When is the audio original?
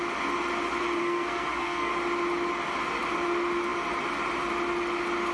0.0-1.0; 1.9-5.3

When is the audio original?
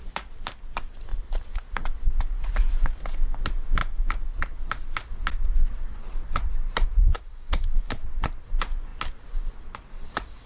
0.0-1.1; 2.6-10.5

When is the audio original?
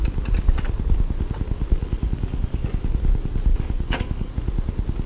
0.0-1.8; 2.7-3.5; 4.3-5.1